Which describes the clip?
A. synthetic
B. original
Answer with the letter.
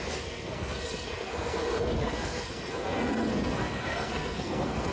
A